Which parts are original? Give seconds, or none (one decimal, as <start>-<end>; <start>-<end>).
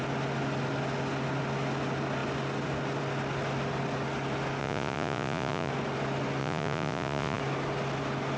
0.0-4.6; 5.7-6.4; 7.4-8.4